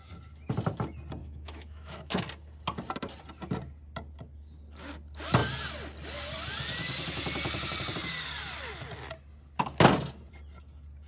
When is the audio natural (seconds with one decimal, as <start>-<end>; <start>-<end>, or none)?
0.0-1.2; 2.2-11.1

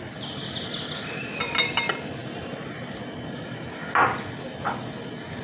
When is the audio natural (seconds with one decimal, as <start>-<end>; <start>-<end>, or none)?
0.0-5.4

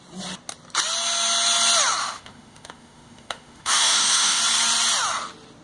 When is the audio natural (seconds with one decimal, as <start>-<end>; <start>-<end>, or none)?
0.0-2.0; 4.4-5.6

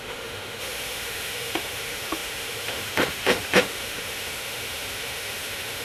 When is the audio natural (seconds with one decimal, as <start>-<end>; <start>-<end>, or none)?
none

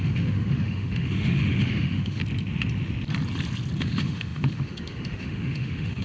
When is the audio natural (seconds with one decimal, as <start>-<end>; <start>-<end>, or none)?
2.2-3.8

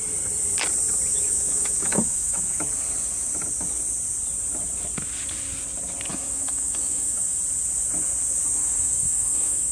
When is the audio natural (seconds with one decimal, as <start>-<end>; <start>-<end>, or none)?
0.0-1.1; 2.6-6.1; 7.4-8.6

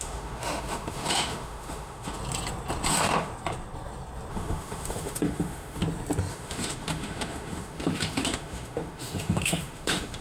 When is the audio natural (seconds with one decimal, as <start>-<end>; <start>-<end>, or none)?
2.2-2.9; 3.3-4.3; 5.8-6.3

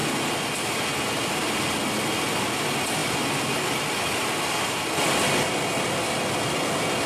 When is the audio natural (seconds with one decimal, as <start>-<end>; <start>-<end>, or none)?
0.0-7.1